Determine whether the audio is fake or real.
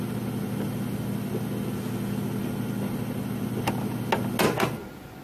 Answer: real